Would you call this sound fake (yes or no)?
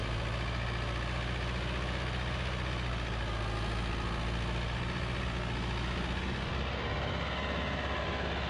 no